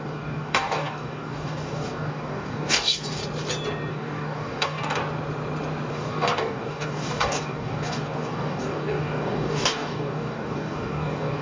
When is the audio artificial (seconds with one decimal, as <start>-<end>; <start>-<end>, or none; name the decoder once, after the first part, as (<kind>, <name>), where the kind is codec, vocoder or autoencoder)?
0.0-3.2 (codec, DAC); 3.9-5.0; 5.9-11.4